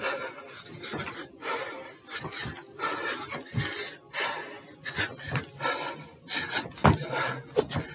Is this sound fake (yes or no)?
no